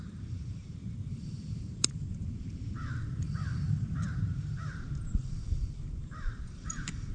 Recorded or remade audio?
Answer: remade